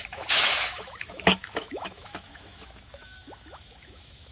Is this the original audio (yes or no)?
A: no